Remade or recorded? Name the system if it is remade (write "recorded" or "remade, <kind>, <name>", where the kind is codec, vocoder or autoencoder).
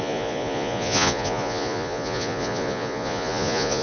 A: remade, vocoder, Vocos